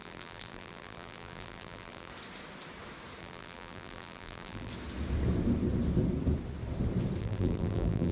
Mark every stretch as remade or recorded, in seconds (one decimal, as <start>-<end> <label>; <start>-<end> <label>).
0.0-2.1 remade; 2.1-3.2 recorded; 3.2-4.7 remade; 4.7-7.2 recorded; 7.2-8.1 remade